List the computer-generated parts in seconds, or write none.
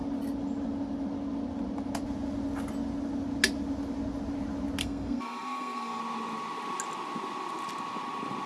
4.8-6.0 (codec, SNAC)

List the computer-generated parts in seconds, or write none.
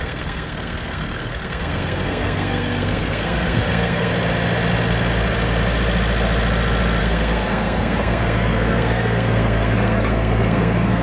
0.0-4.1 (codec, SNAC); 7.0-11.0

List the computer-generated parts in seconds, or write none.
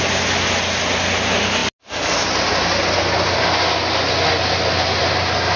none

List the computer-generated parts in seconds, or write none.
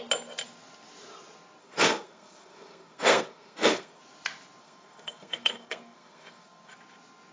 1.6-4.0 (codec, SNAC); 4.6-6.7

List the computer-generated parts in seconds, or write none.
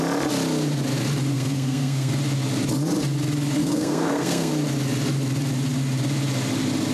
1.3-2.1 (codec, SNAC); 3.6-4.5